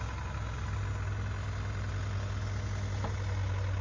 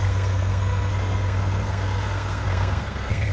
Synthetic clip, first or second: second